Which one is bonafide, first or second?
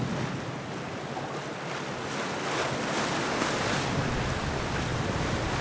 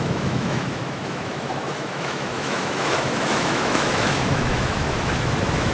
first